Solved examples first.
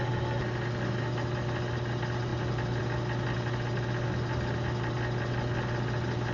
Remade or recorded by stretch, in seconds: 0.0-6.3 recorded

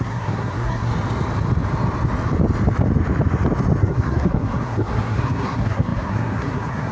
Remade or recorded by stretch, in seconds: 0.0-0.9 remade; 0.9-3.8 recorded; 3.8-6.9 remade

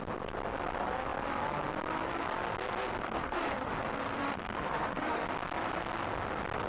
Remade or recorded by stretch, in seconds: 0.0-3.0 recorded; 3.0-3.7 remade; 3.7-4.2 recorded; 4.2-5.2 remade; 5.2-6.7 recorded

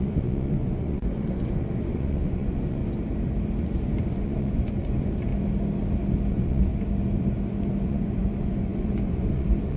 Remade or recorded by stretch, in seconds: 0.0-2.8 remade; 2.8-3.6 recorded; 3.6-5.3 remade; 5.3-6.3 recorded; 6.3-6.7 remade; 6.7-7.8 recorded; 7.8-9.8 remade

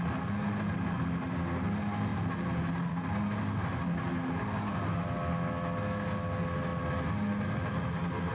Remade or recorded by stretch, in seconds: 0.0-8.3 recorded

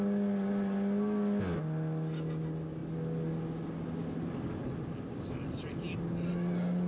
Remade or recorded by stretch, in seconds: 0.0-6.9 recorded

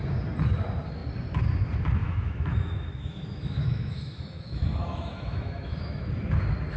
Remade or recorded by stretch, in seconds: 0.0-2.0 recorded; 2.0-6.1 remade; 6.1-6.8 recorded